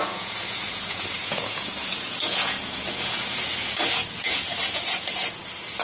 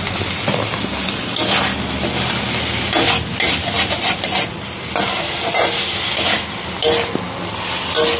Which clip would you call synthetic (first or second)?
first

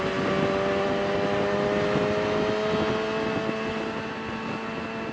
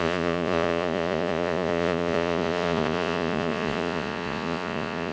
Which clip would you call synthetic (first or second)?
second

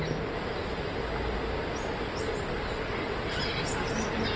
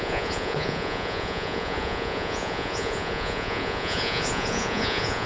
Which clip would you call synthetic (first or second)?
second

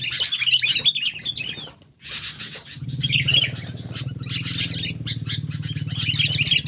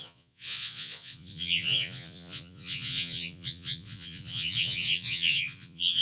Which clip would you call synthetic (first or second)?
second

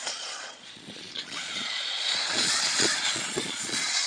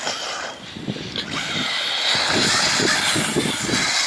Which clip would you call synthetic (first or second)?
first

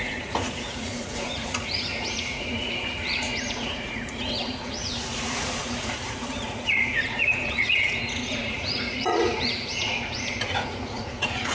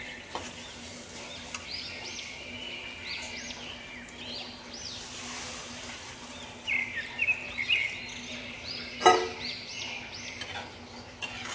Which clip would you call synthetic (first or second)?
first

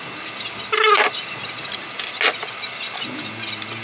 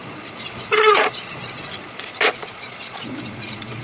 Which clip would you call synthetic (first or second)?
second